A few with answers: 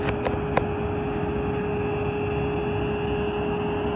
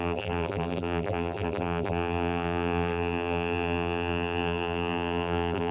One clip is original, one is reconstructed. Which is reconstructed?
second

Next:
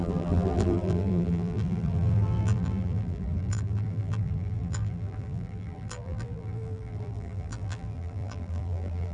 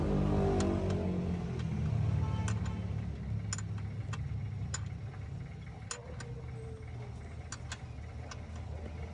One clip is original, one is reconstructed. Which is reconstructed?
first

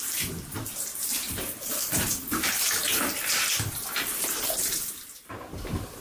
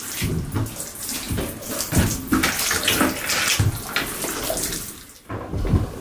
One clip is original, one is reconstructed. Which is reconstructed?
first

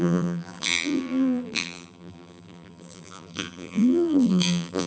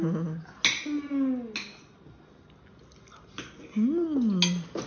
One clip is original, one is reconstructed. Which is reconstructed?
first